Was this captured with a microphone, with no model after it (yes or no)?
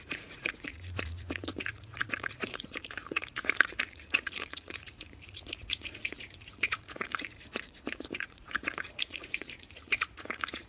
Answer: no